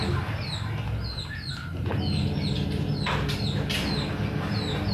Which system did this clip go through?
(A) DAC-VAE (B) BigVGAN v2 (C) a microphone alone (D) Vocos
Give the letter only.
C